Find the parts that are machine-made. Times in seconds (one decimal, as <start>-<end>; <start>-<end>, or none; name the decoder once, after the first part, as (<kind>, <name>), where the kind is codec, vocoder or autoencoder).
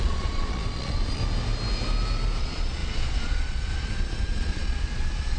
0.0-1.2 (vocoder, Vocos); 2.4-5.4